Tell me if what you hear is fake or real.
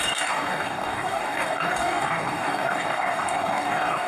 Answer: fake